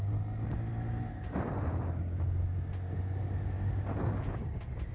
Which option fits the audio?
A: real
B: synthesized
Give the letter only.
A